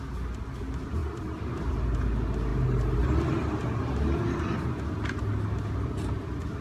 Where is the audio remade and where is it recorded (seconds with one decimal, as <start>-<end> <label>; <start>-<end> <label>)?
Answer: 0.0-1.0 recorded; 1.0-1.6 remade; 1.6-6.6 recorded